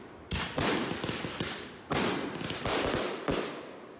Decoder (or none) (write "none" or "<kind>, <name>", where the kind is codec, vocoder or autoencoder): none